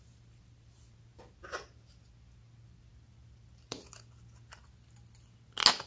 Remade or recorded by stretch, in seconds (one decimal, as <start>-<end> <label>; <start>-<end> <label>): 0.0-5.9 recorded